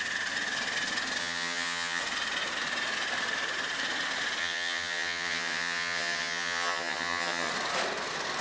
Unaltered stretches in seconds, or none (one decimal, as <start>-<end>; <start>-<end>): 0.0-1.2; 2.0-4.4; 7.5-8.4